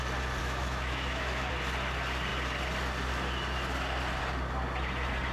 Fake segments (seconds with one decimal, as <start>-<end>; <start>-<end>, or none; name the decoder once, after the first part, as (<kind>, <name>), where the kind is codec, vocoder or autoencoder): 0.4-1.5 (autoencoder, DAC-VAE)